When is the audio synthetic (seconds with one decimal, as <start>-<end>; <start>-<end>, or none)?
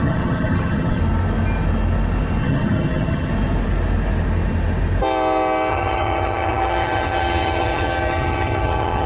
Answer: 0.0-1.0; 2.4-3.3; 5.7-9.1